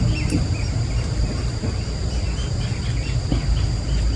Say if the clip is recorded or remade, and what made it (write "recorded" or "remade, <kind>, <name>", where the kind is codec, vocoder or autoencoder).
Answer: recorded